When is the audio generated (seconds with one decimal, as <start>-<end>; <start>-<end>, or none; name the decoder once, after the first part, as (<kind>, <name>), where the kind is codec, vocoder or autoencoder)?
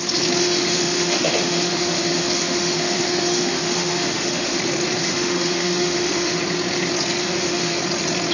0.4-4.6 (autoencoder, DAC-VAE); 5.0-6.4; 7.2-7.8